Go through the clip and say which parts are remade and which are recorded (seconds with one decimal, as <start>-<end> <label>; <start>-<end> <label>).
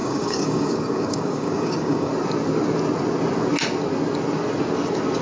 0.0-2.1 remade; 2.1-5.2 recorded